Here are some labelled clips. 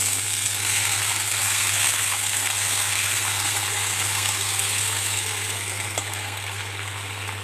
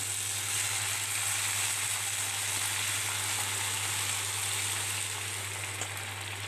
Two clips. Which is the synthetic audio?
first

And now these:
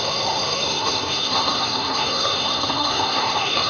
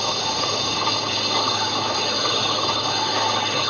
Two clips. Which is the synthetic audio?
first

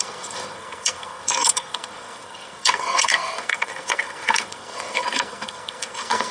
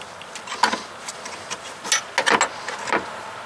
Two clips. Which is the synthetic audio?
first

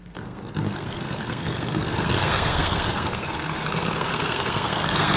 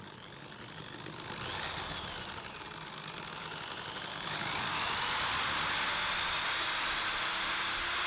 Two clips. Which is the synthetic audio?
first